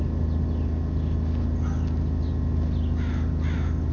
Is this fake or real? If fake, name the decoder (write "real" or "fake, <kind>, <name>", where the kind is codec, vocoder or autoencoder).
real